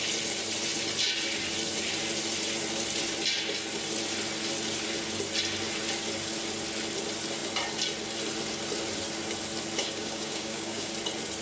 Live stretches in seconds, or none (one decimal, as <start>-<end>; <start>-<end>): 0.0-9.8; 10.9-11.4

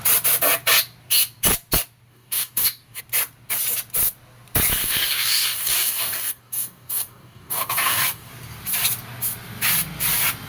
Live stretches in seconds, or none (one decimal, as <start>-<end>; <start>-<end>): 0.0-2.1; 3.0-4.8; 8.3-10.5

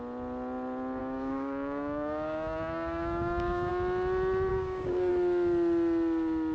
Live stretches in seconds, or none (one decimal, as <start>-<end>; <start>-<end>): 0.0-1.0; 3.7-4.5; 5.1-6.5

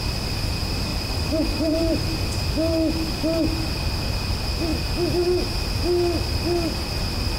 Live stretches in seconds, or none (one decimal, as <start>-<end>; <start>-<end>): 0.0-0.9; 2.3-7.4